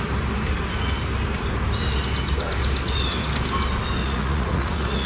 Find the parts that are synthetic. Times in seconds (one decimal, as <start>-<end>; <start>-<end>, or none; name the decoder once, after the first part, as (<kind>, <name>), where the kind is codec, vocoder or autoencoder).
4.0-5.1 (vocoder, Vocos)